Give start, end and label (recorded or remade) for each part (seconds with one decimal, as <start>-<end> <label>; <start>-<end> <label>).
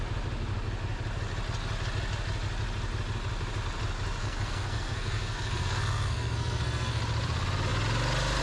0.0-4.2 recorded; 4.2-7.0 remade; 7.0-8.4 recorded